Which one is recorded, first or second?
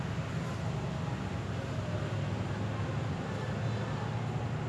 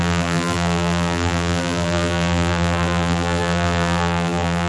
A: first